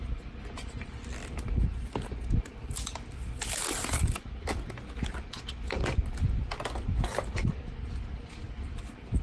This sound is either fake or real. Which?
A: real